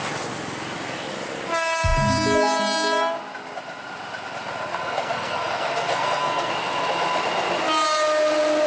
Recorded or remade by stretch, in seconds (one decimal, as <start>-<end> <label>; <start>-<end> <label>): 0.0-4.7 recorded; 4.7-6.5 remade; 6.5-8.7 recorded

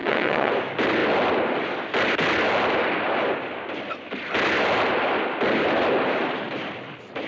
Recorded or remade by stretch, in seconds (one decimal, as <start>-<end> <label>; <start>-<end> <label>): 0.0-0.5 remade; 0.5-7.3 recorded